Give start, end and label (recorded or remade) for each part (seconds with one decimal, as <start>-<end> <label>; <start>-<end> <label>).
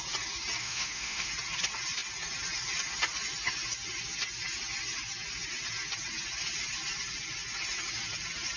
0.0-0.6 recorded; 0.6-1.3 remade; 1.3-8.6 recorded